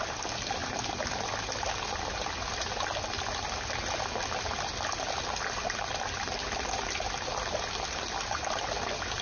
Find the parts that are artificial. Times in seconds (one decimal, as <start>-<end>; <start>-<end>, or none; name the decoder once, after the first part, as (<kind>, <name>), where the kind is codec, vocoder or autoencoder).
none